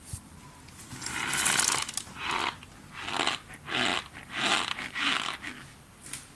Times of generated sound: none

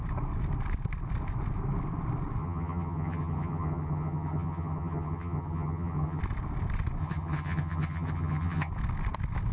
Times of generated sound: 2.4-6.2 (vocoder, HiFi-GAN); 7.0-8.7

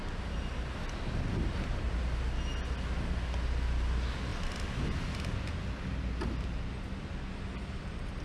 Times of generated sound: 4.3-5.1 (vocoder, BigVGAN v2)

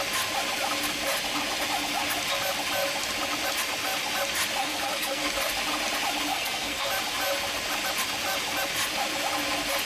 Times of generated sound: 4.6-5.2 (codec, SNAC); 6.3-6.9

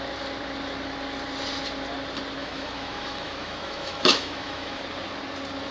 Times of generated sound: 2.4-4.8 (autoencoder, DAC-VAE)

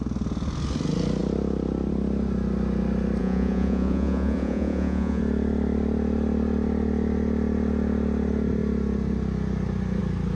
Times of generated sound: 3.2-5.2 (vocoder, Vocos)